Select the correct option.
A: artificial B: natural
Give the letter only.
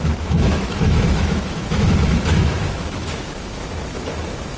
A